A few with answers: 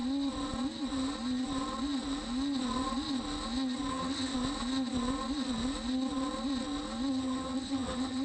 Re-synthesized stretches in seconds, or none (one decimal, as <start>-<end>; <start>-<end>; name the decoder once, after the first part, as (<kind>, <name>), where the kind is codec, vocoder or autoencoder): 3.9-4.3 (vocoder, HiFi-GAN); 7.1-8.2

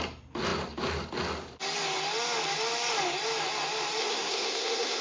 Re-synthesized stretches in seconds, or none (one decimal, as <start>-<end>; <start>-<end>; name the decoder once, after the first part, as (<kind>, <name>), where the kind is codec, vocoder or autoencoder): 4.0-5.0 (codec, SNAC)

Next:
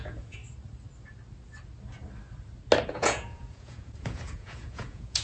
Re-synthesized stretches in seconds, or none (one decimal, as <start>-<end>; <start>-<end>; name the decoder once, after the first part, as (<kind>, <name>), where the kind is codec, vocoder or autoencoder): 0.0-0.4 (vocoder, Vocos); 2.9-5.2